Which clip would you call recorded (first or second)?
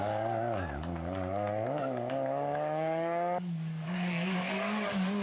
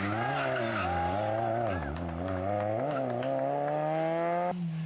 second